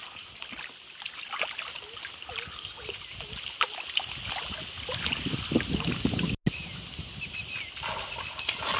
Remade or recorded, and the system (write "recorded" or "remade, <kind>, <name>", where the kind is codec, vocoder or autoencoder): recorded